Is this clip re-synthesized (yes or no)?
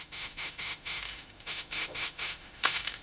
yes